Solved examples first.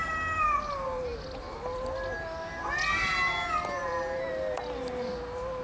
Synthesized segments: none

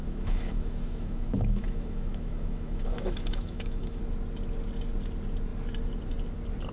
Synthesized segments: 0.0-4.0 (autoencoder, DAC-VAE)

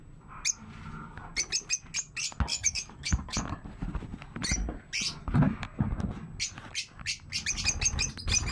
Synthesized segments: 2.5-3.4 (autoencoder, DAC-VAE)

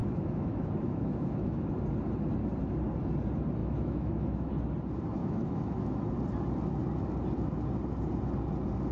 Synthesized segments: 0.0-1.7 (autoencoder, DAC-VAE); 3.6-4.5; 5.2-6.1

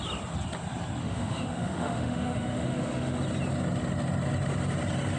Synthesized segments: 1.0-3.2 (autoencoder, DAC-VAE)

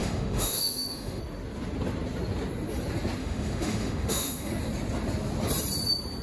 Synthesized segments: 0.0-1.2 (autoencoder, DAC-VAE); 3.2-4.5